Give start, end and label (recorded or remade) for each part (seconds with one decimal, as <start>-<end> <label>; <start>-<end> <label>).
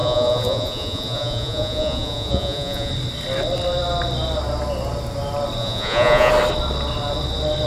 0.0-2.9 remade; 2.9-5.6 recorded; 5.6-6.3 remade; 6.3-7.7 recorded